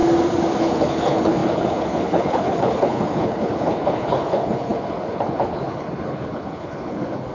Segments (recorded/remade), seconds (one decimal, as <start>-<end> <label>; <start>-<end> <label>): 0.0-0.6 recorded; 0.6-7.3 remade